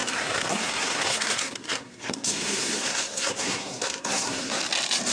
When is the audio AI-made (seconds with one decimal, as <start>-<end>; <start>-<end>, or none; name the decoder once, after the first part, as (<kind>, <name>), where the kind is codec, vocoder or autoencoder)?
0.0-4.6 (codec, SNAC)